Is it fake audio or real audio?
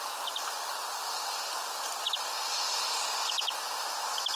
real